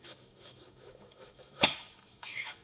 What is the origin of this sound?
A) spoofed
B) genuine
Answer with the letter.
A